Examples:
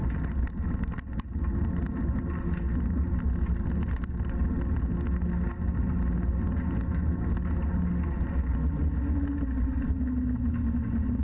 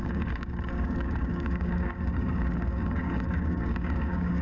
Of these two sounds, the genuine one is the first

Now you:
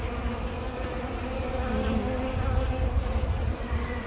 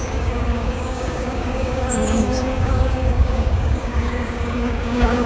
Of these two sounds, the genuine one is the first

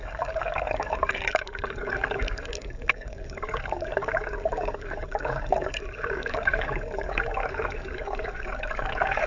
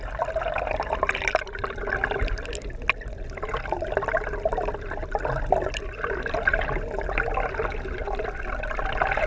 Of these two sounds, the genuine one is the second